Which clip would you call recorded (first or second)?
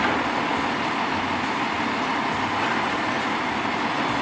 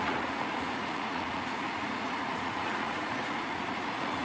first